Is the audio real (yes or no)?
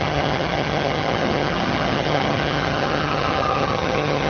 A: no